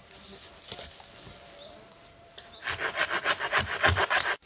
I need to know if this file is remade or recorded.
recorded